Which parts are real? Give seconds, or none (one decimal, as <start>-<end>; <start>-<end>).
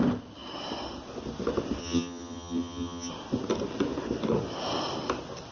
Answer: 0.0-1.8; 3.1-5.5